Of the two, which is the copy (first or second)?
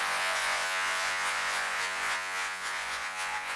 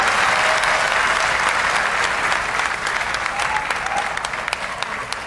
first